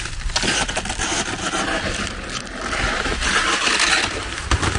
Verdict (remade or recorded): recorded